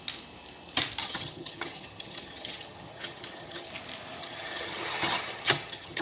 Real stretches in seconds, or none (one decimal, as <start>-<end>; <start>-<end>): 0.0-1.0; 3.7-4.2